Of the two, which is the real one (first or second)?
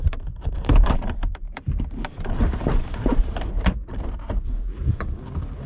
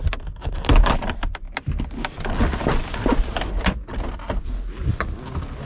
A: second